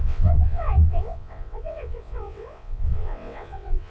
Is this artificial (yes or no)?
yes